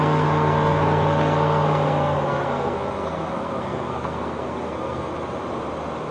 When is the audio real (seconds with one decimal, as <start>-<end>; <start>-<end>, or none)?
5.1-6.1